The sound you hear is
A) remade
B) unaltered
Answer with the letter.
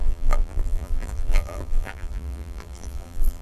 A